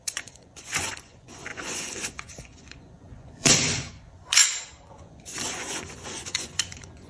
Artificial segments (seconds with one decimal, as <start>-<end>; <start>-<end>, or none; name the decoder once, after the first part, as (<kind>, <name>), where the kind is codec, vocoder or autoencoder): 0.0-4.4 (vocoder, Vocos); 4.9-7.1